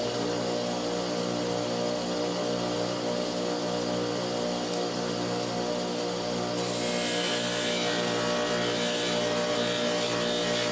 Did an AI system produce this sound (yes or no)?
no